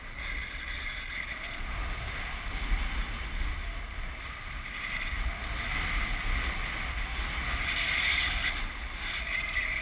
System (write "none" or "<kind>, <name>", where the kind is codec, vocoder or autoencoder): none